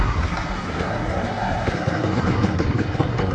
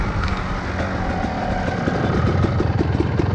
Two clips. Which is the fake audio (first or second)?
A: first